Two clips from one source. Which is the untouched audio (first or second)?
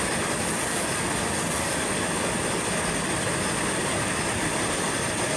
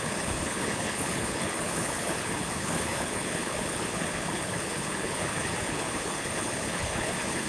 first